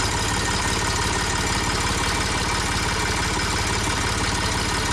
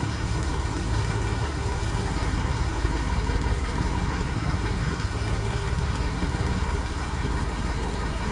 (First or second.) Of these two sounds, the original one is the first